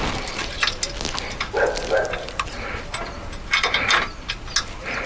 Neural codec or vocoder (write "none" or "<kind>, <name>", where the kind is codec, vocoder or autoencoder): none